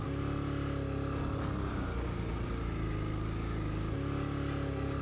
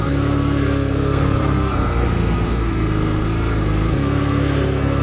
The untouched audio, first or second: first